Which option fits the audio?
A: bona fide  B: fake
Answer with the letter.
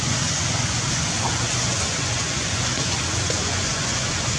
B